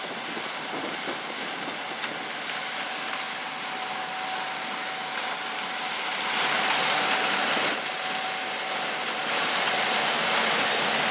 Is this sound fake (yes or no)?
no